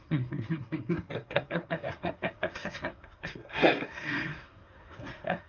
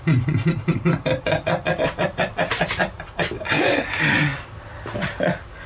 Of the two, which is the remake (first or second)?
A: first